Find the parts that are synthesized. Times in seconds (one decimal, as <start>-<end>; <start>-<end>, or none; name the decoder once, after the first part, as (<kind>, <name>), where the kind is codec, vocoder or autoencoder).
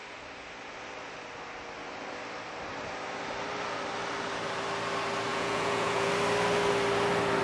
5.3-6.1 (vocoder, Vocos)